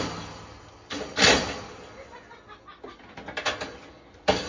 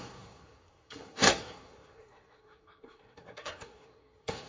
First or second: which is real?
first